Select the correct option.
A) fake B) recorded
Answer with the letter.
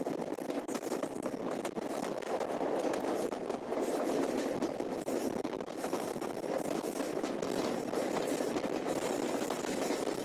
B